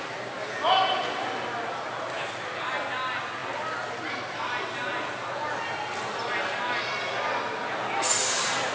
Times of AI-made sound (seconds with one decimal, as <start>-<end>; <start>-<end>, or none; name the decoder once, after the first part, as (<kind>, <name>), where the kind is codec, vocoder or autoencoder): none